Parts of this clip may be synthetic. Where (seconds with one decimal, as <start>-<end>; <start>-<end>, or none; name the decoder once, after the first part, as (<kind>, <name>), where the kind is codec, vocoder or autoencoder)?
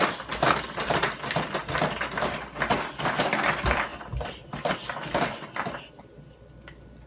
none